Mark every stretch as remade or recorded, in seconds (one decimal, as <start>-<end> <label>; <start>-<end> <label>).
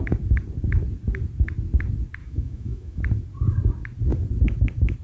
0.0-2.2 recorded; 2.2-3.0 remade; 3.0-5.0 recorded